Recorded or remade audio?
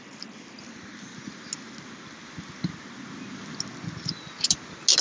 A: recorded